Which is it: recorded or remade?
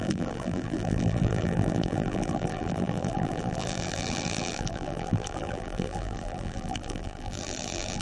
remade